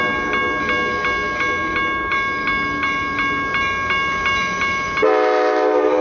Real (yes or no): yes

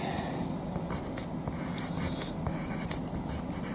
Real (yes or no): yes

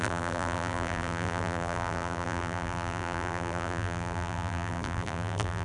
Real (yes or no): no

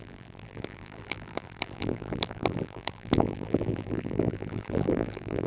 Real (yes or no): no